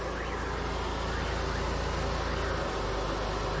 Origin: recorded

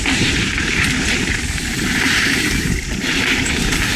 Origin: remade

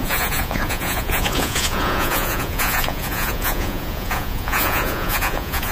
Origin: remade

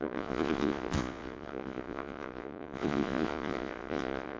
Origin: remade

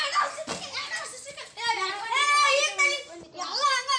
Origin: recorded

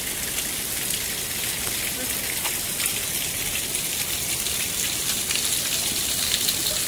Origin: recorded